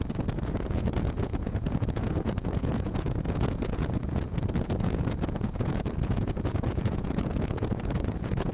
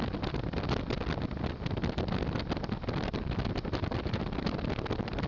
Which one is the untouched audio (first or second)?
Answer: second